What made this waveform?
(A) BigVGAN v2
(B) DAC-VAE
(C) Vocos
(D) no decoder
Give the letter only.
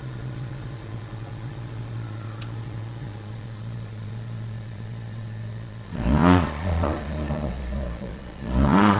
C